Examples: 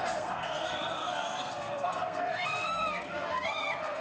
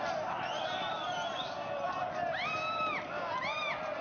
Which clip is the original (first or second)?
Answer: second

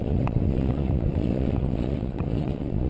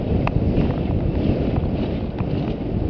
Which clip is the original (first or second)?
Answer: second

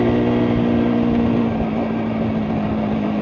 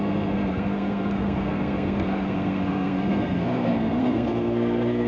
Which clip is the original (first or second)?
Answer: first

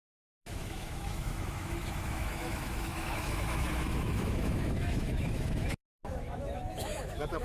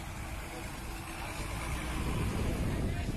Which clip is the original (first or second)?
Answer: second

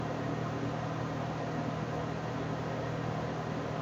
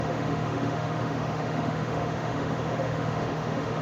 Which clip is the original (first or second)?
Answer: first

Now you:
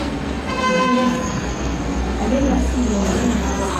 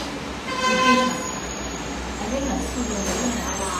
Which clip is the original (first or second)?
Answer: second